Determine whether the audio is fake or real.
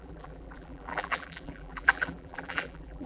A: fake